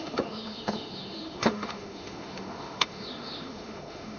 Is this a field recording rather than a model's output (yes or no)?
no